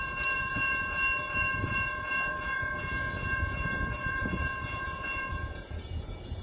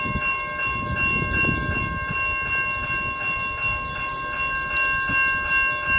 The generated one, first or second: first